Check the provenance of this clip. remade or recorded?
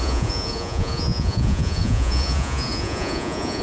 remade